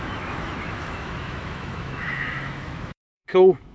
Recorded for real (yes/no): no